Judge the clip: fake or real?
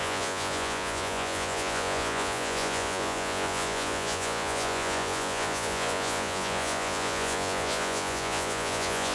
fake